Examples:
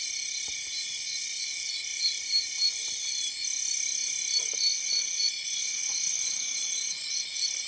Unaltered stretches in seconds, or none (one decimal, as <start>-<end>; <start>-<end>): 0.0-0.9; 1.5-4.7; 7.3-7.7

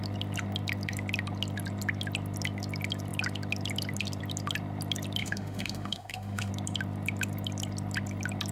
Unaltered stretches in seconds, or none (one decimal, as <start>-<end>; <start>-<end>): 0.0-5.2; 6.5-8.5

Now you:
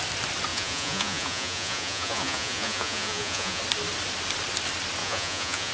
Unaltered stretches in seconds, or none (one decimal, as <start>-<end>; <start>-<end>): 0.0-0.5; 3.6-5.0